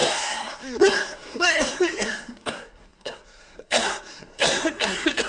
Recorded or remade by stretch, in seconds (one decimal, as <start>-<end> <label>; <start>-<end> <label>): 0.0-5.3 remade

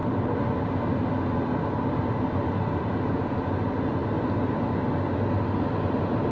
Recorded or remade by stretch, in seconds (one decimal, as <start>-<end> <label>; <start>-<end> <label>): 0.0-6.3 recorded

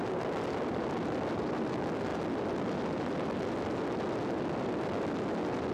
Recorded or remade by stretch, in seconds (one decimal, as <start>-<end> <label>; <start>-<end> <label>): 0.0-5.7 recorded

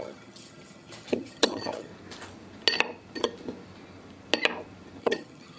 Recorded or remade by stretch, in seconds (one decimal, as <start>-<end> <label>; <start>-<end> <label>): 0.0-1.9 remade; 1.9-5.0 recorded; 5.0-5.6 remade

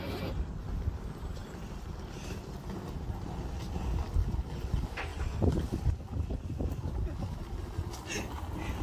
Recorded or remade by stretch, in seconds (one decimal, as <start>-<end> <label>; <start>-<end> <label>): 0.0-8.8 recorded